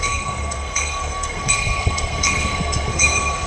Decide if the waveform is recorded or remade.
remade